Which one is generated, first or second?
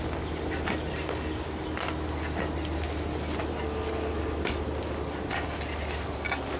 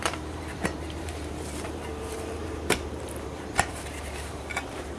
second